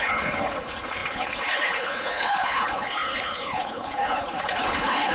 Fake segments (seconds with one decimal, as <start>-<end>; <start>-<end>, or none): 0.0-5.1